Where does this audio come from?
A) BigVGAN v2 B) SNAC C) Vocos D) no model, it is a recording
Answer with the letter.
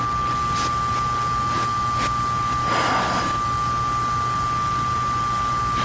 D